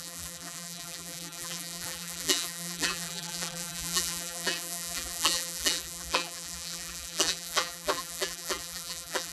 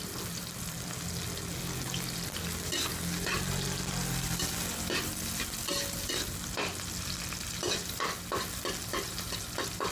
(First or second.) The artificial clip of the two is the first